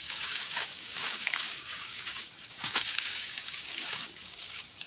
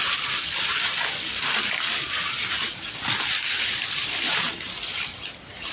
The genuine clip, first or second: second